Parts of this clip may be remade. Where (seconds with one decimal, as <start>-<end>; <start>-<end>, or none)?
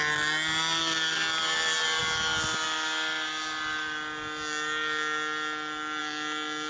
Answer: none